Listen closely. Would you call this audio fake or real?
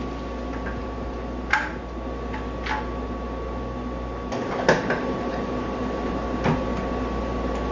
real